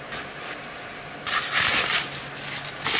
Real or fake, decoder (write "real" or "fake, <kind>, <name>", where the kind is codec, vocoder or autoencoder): real